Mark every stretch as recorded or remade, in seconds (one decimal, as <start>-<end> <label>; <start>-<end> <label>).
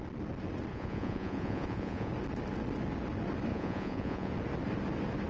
0.0-0.7 recorded; 0.7-2.1 remade; 2.1-3.5 recorded; 3.5-4.3 remade; 4.3-5.3 recorded